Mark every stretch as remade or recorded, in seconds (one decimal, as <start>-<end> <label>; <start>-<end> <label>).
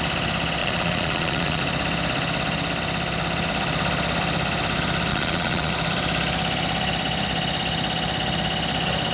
0.0-0.6 recorded; 0.6-1.6 remade; 1.6-5.1 recorded; 5.1-5.7 remade; 5.7-9.1 recorded